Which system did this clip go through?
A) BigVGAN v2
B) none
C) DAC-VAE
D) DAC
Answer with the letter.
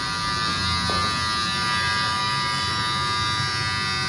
B